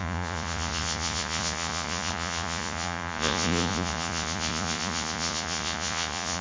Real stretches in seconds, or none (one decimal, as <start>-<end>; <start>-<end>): none